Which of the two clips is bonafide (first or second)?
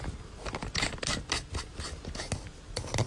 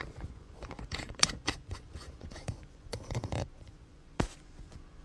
first